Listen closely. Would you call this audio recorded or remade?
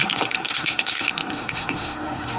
remade